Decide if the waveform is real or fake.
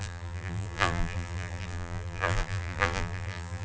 fake